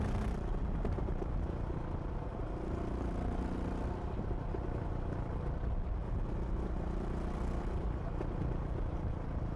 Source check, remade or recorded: recorded